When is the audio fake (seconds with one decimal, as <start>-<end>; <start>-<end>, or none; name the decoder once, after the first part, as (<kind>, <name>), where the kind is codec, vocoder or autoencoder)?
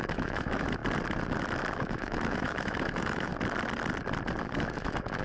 0.0-0.8 (autoencoder, DAC-VAE); 1.7-3.3; 4.4-5.2